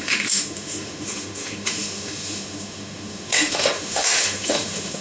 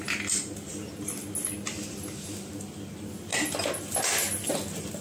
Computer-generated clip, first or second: first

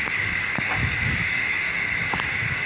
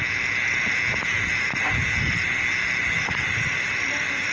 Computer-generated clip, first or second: first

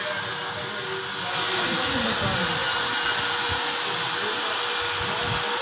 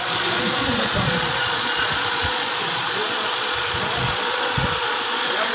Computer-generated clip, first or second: second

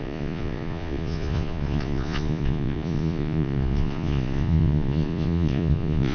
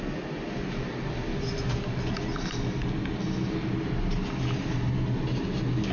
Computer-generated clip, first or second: first